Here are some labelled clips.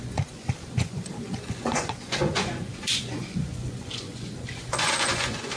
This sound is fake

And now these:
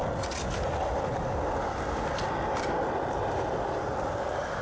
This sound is real